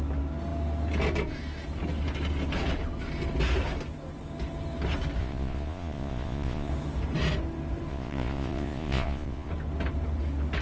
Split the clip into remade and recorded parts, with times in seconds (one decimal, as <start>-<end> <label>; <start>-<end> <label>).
0.0-5.2 recorded; 5.2-6.7 remade; 6.7-7.9 recorded; 7.9-9.5 remade; 9.5-10.6 recorded